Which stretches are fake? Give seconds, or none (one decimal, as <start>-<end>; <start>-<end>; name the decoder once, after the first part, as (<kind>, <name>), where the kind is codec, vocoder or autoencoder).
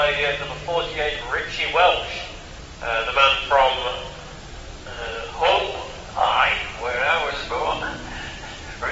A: 3.9-7.1 (vocoder, BigVGAN v2)